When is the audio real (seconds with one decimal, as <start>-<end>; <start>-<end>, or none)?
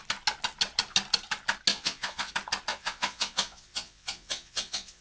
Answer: 0.0-1.7; 2.3-2.7